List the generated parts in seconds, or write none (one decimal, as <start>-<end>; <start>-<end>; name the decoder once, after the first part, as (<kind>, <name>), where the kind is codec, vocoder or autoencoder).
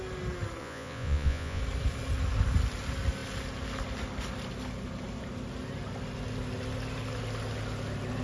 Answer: 0.6-1.6 (vocoder, Vocos)